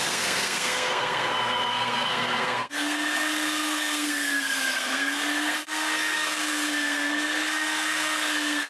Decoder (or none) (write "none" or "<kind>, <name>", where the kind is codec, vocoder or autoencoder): codec, SNAC